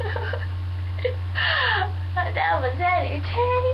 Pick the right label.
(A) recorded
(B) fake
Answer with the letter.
A